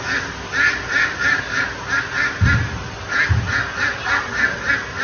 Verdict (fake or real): real